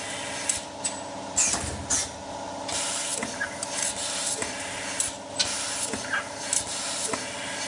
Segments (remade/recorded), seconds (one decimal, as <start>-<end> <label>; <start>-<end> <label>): 0.0-7.7 recorded